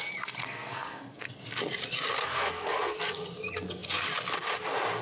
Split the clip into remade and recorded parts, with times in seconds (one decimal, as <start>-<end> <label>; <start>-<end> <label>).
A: 0.0-0.4 recorded; 0.4-1.3 remade; 1.3-2.2 recorded; 2.2-3.0 remade; 3.0-5.0 recorded